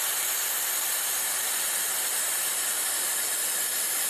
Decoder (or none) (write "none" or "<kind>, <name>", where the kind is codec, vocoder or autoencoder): vocoder, BigVGAN v2